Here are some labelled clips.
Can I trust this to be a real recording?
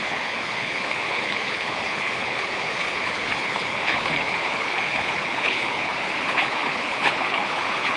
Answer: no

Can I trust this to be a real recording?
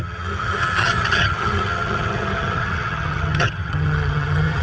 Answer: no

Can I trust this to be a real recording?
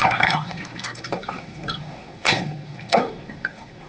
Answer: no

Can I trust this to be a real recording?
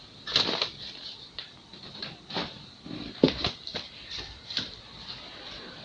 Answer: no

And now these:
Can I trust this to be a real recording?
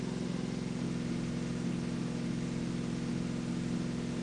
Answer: yes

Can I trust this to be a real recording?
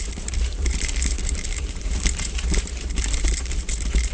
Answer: no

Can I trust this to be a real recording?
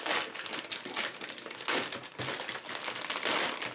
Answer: yes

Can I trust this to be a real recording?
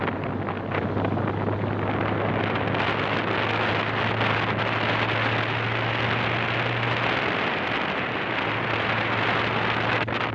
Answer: yes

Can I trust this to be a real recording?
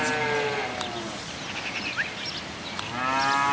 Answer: yes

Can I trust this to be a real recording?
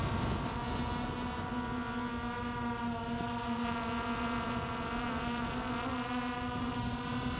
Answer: yes